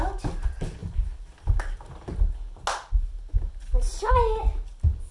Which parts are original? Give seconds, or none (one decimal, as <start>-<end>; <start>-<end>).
0.0-5.1